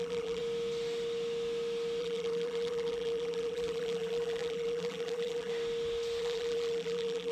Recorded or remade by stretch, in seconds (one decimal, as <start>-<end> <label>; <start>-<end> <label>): 0.0-0.4 remade; 0.4-2.0 recorded; 2.0-5.5 remade; 5.5-6.2 recorded; 6.2-7.3 remade

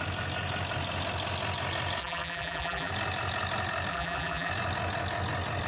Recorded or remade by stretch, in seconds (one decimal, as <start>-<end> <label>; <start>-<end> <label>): 0.0-2.0 recorded; 2.0-2.9 remade; 2.9-3.9 recorded; 3.9-4.5 remade; 4.5-5.7 recorded